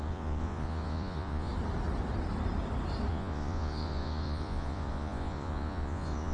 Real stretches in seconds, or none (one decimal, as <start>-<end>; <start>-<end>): 1.5-3.1